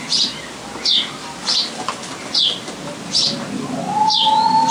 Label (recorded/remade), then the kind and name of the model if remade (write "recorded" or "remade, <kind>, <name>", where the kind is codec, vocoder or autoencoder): recorded